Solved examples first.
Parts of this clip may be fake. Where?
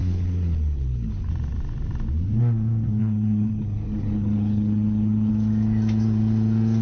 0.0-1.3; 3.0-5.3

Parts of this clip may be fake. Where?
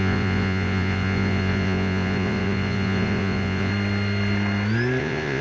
0.0-3.7; 5.0-5.4